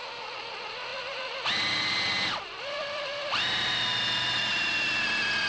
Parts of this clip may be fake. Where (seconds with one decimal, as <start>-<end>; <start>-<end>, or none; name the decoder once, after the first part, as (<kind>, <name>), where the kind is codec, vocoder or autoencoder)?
none

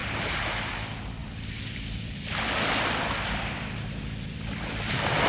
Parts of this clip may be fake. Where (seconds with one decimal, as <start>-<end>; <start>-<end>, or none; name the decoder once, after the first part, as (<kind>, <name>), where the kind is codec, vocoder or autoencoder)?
none

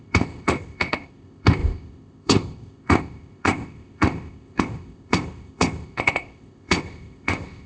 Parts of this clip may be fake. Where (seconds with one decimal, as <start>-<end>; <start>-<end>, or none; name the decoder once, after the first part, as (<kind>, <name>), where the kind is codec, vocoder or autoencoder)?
0.0-7.7 (codec, ZipCodec)

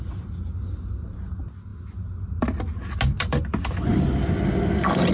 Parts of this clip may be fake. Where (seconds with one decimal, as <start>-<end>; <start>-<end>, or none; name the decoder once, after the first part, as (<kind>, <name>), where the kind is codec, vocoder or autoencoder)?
none

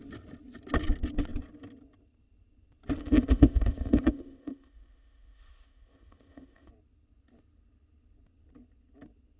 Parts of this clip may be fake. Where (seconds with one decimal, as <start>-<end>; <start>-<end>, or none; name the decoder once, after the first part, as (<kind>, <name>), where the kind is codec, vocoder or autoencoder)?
3.0-6.7 (codec, ZipCodec)

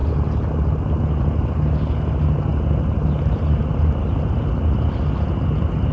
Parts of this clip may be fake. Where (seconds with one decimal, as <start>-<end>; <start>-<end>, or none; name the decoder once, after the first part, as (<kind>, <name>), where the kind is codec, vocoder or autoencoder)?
none

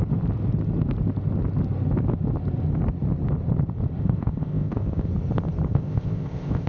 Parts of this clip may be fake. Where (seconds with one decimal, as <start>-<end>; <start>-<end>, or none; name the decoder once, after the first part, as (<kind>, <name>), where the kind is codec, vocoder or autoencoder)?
4.0-5.1 (codec, ZipCodec); 5.7-6.7